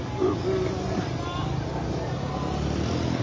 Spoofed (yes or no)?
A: no